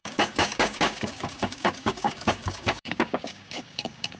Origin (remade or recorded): remade